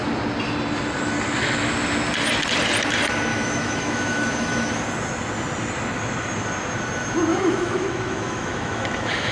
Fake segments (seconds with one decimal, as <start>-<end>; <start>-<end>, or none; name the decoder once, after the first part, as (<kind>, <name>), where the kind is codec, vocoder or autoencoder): 3.3-4.7 (autoencoder, DAC-VAE); 7.3-9.3

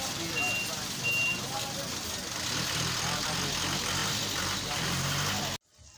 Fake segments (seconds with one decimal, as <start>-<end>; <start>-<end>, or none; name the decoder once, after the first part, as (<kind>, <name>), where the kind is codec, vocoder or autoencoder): none

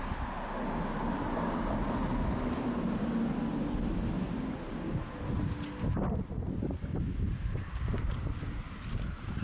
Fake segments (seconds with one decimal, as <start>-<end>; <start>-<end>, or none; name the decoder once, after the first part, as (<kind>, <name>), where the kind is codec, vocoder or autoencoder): 6.9-9.4 (vocoder, BigVGAN v2)

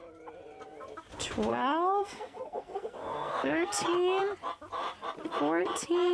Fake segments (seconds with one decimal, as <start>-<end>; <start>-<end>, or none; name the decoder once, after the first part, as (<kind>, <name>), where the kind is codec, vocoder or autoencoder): 1.5-3.7 (codec, SNAC)

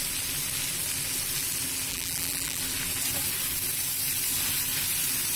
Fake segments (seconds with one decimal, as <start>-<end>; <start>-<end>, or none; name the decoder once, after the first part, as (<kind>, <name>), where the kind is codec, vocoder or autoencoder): 1.9-2.6 (vocoder, BigVGAN v2)

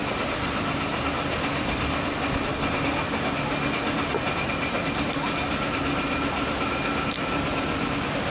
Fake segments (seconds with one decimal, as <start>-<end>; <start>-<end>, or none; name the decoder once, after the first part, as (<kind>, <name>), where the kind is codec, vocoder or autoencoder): none

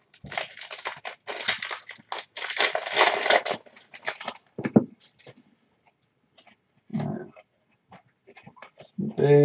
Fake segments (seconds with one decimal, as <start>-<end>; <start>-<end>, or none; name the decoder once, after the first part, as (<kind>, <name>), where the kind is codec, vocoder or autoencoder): none

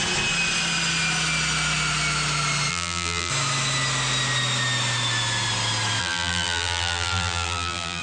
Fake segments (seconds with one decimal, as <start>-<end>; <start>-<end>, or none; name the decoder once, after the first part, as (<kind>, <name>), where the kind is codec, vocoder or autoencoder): 2.7-3.3 (vocoder, BigVGAN v2); 6.0-8.0